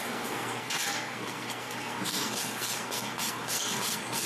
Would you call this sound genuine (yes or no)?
no